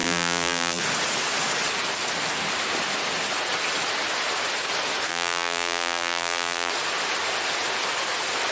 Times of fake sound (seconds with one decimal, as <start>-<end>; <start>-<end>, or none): 0.0-0.8; 5.1-6.7